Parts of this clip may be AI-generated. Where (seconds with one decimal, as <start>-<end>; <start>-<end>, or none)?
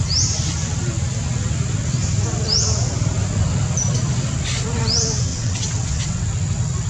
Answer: 5.3-6.2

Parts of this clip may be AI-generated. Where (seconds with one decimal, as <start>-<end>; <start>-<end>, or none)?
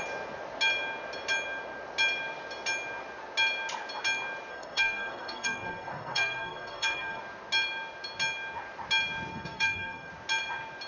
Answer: 4.5-7.2; 9.3-10.1